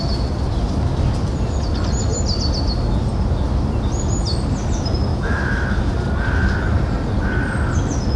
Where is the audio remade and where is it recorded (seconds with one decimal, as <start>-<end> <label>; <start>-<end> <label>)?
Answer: 0.0-5.1 recorded; 5.1-5.9 remade; 5.9-8.2 recorded